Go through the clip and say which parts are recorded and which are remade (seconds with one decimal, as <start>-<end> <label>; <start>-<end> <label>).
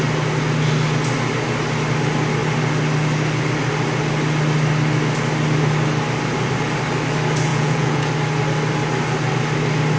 0.0-7.5 recorded; 7.5-8.1 remade; 8.1-10.0 recorded